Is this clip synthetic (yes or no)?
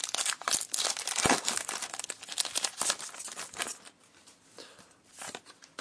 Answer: no